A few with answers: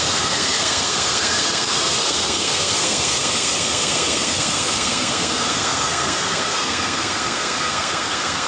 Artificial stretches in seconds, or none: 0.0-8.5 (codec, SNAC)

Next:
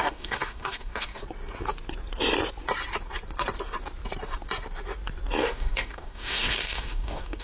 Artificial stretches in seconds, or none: 0.0-1.2 (codec, DAC); 5.4-7.4

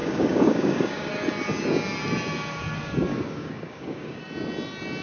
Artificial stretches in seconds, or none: 0.0-1.1 (codec, DAC); 3.1-4.2

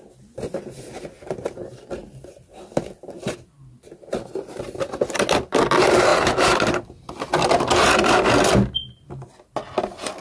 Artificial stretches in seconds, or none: none

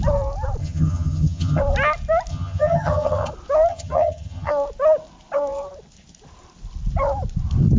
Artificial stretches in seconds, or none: 0.6-1.6 (vocoder, HiFi-GAN); 2.3-3.3; 3.7-4.5

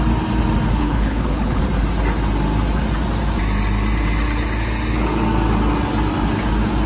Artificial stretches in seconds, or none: 0.8-1.6 (codec, HILCodec)

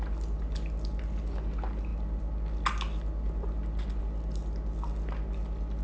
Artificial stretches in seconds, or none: none

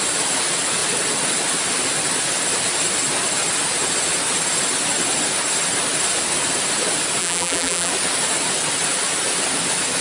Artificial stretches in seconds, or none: 7.2-7.9 (vocoder, BigVGAN v2)